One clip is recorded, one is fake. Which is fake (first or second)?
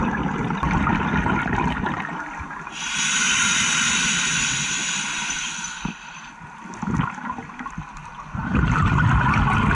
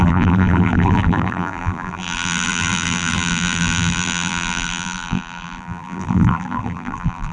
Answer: second